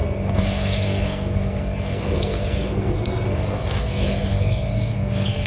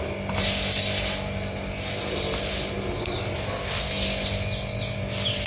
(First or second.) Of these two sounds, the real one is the second